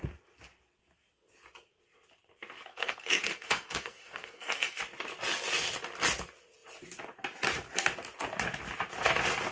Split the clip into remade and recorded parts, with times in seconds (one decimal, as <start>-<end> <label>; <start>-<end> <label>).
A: 0.0-2.7 recorded; 2.7-4.8 remade; 4.8-9.5 recorded